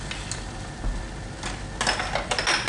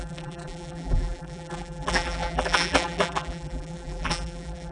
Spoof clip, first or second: second